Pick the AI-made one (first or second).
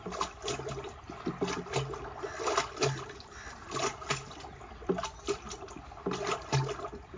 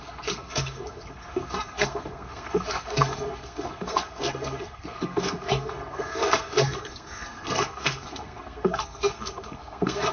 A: second